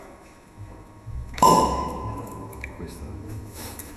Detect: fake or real fake